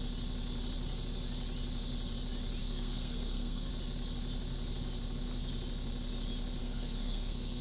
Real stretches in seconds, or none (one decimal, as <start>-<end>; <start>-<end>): 0.0-2.6; 3.7-6.6